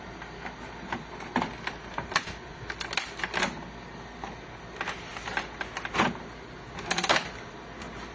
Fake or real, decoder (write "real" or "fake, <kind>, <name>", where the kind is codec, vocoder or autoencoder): real